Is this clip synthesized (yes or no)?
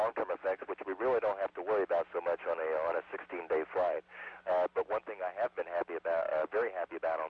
no